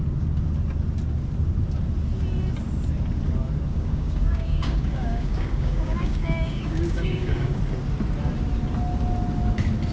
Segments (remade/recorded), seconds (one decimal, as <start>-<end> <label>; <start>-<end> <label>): 0.0-3.7 recorded; 3.7-7.6 remade; 7.6-9.9 recorded